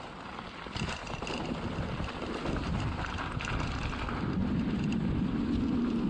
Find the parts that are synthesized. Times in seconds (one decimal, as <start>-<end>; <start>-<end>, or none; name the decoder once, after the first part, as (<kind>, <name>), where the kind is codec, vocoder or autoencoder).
none